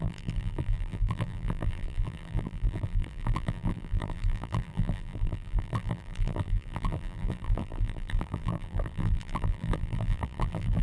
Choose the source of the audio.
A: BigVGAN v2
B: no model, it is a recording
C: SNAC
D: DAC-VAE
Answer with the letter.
A